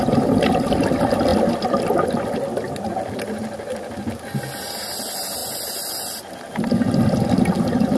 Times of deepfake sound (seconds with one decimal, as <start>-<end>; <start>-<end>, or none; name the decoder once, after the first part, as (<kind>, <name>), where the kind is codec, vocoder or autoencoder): none